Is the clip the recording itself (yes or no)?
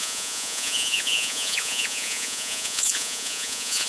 no